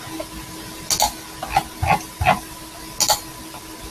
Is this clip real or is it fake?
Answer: real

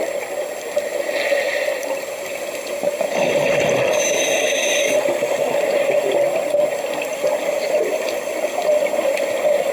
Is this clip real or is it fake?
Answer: real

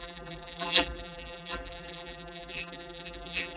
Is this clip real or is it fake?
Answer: fake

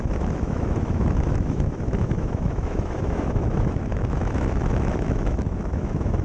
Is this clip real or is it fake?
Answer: fake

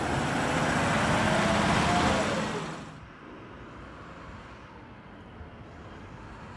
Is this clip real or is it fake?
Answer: real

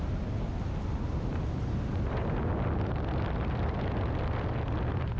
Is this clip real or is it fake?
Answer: real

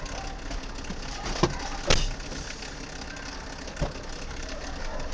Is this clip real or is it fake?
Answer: real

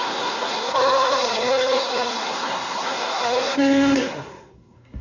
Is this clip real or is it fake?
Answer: fake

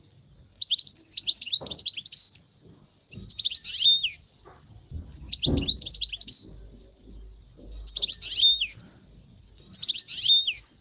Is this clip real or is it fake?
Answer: real